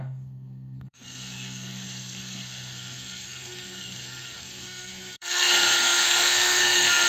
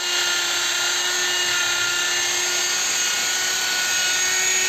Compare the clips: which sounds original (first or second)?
second